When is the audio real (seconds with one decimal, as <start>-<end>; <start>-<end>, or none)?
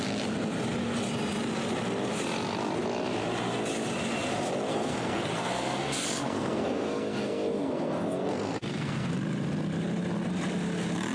0.0-4.7; 9.1-11.1